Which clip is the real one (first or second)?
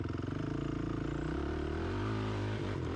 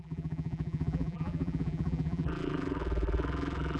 first